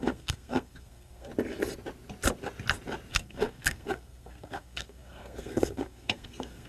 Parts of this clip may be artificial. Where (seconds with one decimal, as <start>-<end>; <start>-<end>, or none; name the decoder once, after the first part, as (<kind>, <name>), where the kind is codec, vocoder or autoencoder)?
0.0-1.3 (codec, SNAC); 3.1-6.7